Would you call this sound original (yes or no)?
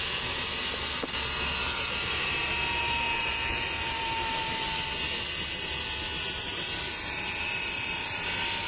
yes